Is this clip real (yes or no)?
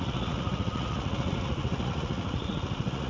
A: no